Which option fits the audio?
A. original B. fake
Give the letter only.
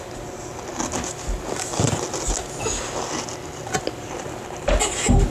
A